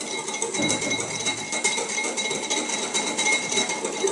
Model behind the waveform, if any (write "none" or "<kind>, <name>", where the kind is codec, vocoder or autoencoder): none